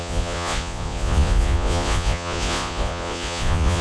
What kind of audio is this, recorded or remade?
remade